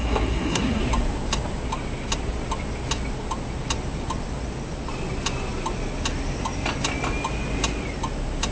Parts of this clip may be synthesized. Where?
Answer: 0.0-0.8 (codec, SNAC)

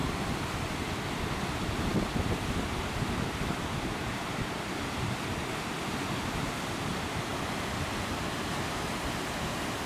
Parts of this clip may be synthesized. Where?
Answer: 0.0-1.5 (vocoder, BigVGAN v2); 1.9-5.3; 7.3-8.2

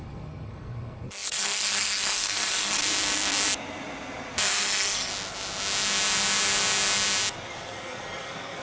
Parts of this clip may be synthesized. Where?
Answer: 0.0-2.8 (codec, SNAC); 4.4-5.1; 7.5-8.6

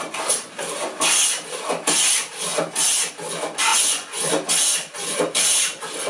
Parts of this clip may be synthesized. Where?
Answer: 3.7-4.3 (vocoder, Vocos)